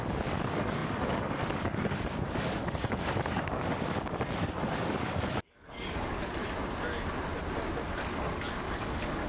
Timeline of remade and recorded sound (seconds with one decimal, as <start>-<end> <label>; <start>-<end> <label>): 0.0-6.4 remade; 6.4-8.5 recorded; 8.5-9.3 remade